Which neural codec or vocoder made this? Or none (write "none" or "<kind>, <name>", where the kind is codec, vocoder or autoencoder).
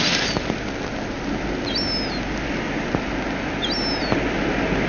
none